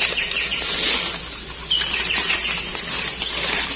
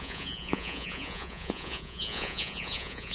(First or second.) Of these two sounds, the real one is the first